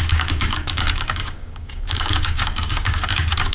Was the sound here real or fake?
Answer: fake